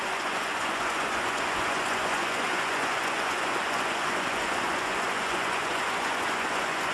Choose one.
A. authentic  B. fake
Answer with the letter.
B